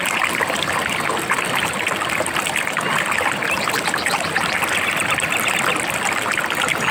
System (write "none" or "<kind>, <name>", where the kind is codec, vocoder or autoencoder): none